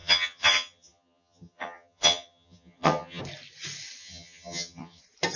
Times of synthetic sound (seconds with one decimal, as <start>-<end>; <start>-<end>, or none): 0.0-3.2; 4.0-5.0